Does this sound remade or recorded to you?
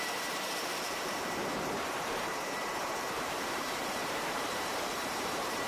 remade